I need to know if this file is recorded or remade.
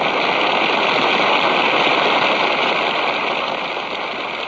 recorded